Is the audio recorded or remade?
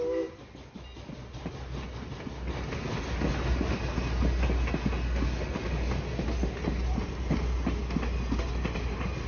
recorded